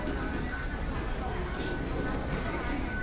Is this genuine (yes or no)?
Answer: yes